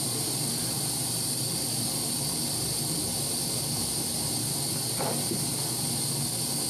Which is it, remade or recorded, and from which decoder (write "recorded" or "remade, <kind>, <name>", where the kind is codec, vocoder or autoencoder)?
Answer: recorded